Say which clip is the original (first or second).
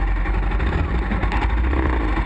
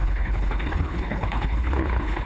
first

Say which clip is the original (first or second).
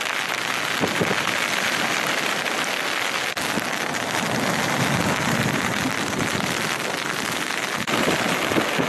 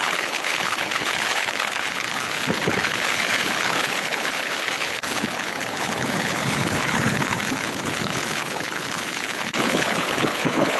first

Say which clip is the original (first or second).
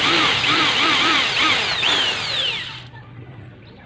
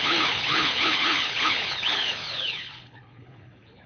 first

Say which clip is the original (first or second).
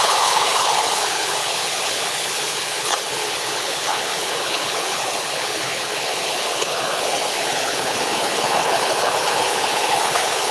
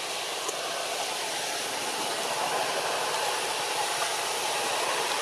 second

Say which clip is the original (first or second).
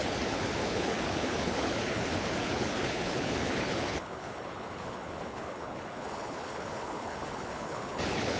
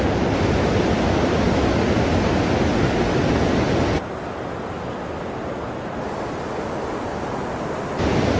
second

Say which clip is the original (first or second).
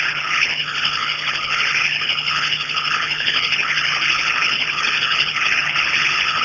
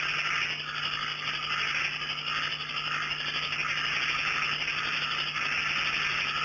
second